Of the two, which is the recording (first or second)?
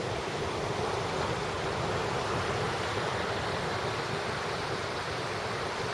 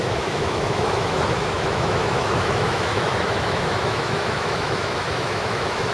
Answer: first